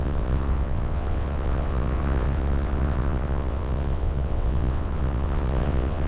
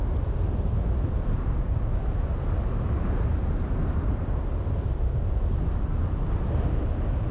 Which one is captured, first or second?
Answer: second